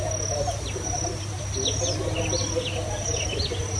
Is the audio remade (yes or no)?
no